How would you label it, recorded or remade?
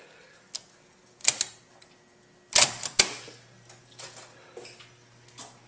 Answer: recorded